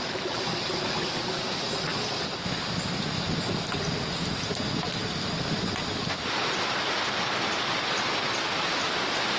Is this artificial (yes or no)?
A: no